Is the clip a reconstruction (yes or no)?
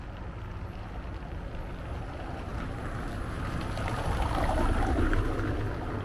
no